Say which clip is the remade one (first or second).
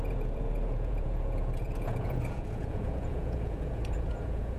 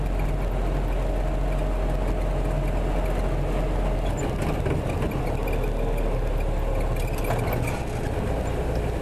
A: first